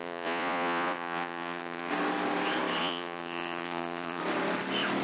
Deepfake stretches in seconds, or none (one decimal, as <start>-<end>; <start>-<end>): 0.0-1.9; 2.8-4.2